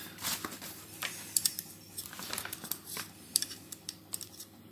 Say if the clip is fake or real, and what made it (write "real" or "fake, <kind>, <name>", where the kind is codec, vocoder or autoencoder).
fake, vocoder, BigVGAN v2